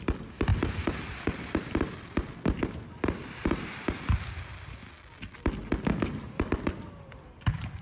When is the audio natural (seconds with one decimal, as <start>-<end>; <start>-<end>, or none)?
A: 4.8-6.7